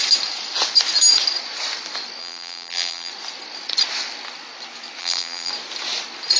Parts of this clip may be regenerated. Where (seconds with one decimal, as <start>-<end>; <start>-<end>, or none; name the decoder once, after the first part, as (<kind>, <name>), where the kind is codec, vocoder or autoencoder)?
2.2-3.1 (vocoder, BigVGAN v2); 5.0-5.5